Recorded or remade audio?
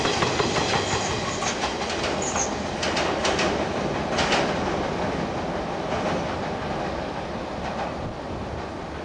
recorded